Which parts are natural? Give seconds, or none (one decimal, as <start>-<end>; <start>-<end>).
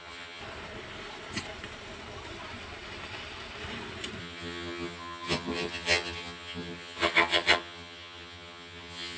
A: 0.4-4.2